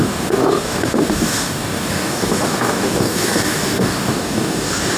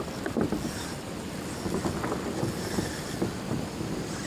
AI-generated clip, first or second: first